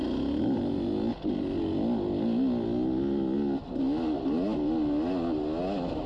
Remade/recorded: recorded